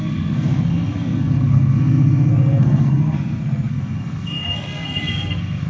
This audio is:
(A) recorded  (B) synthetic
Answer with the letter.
B